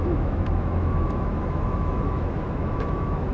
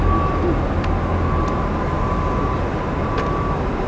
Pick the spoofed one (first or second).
first